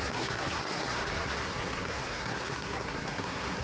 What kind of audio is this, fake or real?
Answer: fake